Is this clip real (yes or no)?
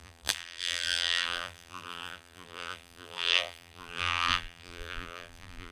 no